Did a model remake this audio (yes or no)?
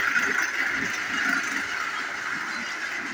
no